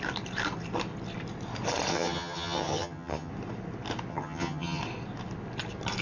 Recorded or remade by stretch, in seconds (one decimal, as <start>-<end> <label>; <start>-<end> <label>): 0.0-1.9 recorded; 1.9-3.3 remade; 3.3-4.1 recorded; 4.1-4.8 remade; 4.8-6.0 recorded